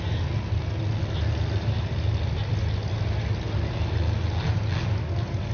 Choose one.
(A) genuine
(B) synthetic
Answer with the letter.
A